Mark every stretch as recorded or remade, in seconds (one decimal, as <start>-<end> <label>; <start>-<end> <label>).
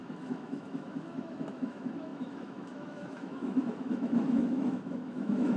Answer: 0.0-5.6 remade